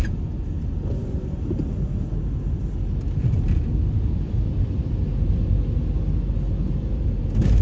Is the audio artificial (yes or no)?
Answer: no